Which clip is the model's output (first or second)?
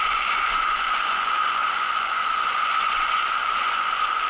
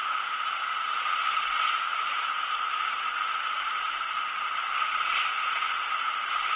first